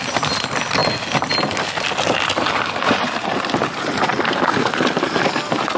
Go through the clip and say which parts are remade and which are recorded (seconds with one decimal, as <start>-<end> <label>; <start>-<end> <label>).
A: 0.0-5.8 recorded